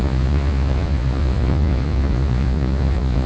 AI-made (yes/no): yes